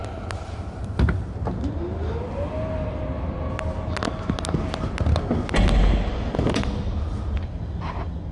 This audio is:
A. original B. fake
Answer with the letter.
A